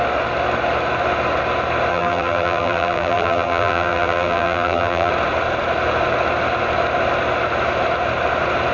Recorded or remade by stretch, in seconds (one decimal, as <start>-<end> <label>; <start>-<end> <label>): 0.0-1.9 recorded; 1.9-5.1 remade; 5.1-8.7 recorded